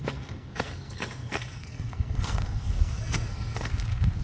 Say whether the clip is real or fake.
fake